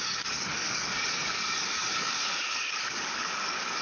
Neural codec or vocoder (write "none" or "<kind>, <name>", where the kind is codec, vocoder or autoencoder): codec, DAC